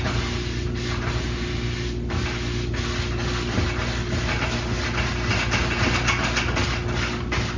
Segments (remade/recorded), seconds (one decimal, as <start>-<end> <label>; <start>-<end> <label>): 0.0-7.6 recorded